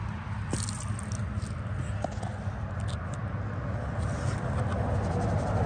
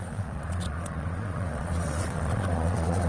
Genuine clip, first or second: first